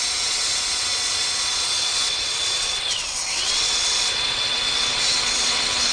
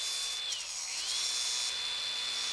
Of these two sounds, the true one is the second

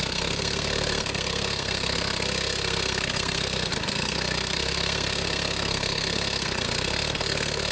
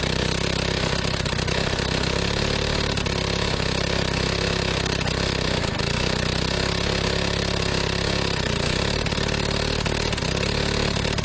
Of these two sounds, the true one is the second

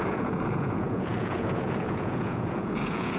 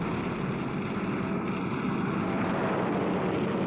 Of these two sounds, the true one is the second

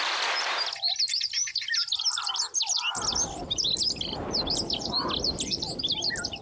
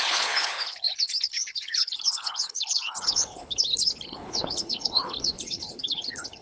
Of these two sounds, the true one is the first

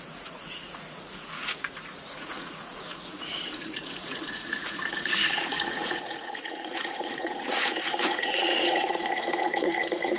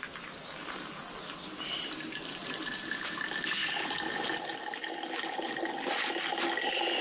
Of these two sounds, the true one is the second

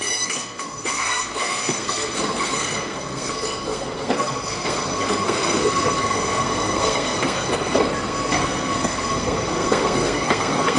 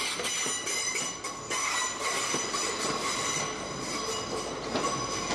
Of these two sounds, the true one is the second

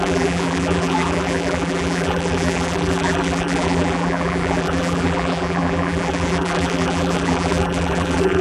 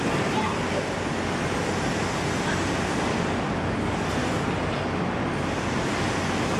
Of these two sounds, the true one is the second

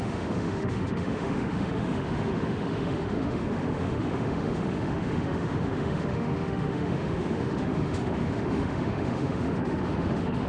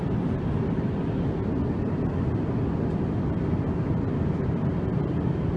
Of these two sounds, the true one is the second